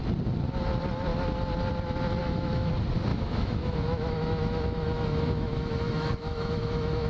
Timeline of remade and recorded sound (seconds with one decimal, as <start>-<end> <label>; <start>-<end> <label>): 0.0-2.2 recorded; 2.2-2.7 remade; 2.7-3.1 recorded; 3.1-7.1 remade